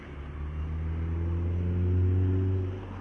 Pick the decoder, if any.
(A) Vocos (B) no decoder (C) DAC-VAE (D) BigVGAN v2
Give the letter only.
B